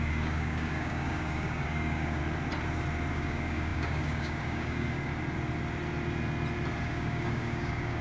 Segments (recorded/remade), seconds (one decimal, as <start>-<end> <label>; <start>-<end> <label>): 0.0-2.2 remade; 2.2-3.1 recorded; 3.1-5.1 remade; 5.1-6.8 recorded; 6.8-8.0 remade